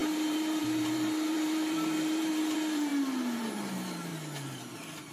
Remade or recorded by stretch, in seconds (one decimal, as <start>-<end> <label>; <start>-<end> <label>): 0.0-2.9 remade; 2.9-3.4 recorded; 3.4-4.1 remade; 4.1-5.1 recorded